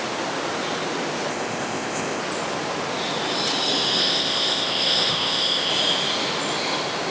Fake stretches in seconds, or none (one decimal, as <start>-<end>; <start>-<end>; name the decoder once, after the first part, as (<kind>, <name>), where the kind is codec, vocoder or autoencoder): 1.3-2.2 (codec, ZipCodec); 4.0-5.7